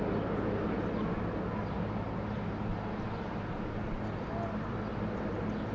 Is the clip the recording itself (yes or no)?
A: yes